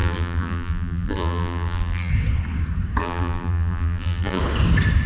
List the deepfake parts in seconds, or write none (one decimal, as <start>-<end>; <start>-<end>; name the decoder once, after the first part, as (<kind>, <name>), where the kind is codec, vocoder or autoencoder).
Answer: 0.0-2.1 (vocoder, BigVGAN v2); 3.0-4.4